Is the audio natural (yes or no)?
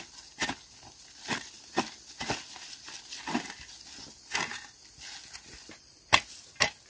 yes